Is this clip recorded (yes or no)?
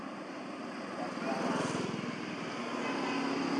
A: yes